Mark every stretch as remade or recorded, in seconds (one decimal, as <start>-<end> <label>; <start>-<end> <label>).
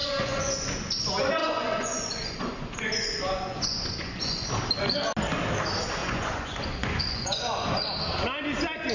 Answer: 0.0-0.5 remade; 0.5-1.4 recorded; 1.4-4.5 remade; 4.5-6.0 recorded; 6.0-7.8 remade; 7.8-8.9 recorded